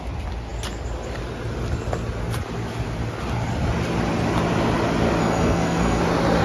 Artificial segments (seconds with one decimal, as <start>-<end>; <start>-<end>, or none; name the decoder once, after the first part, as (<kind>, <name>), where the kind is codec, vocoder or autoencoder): 5.2-6.0 (codec, SNAC)